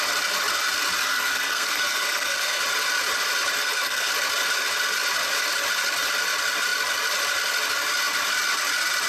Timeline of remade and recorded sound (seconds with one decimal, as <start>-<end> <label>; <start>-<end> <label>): 0.0-1.1 recorded; 1.1-2.6 remade; 2.6-3.6 recorded; 3.6-4.1 remade; 4.1-9.1 recorded